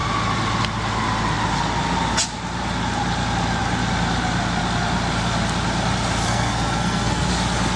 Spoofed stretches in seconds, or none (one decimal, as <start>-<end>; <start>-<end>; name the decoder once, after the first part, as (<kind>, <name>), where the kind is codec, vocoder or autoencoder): 6.2-7.3 (codec, SNAC)